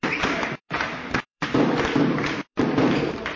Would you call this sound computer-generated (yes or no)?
yes